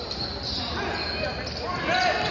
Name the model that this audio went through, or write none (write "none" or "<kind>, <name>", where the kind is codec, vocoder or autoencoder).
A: none